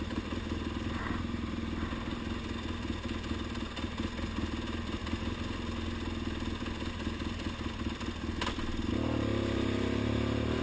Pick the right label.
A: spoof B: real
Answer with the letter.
B